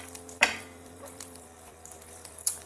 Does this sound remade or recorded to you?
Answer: remade